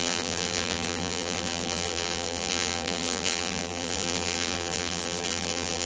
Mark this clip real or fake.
fake